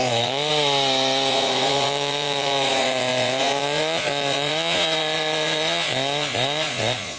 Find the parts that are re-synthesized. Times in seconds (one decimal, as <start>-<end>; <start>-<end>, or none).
0.0-0.5; 1.3-7.2